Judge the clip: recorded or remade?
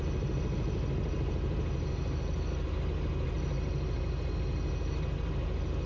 recorded